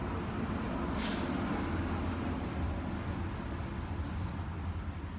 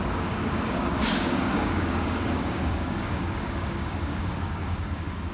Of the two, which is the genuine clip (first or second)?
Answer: first